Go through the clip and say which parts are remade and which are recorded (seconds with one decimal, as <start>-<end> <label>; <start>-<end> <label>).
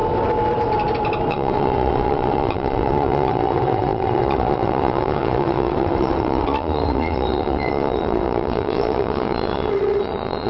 0.0-1.3 recorded; 1.3-10.5 remade